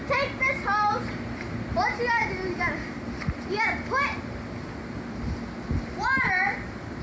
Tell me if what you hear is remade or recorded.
recorded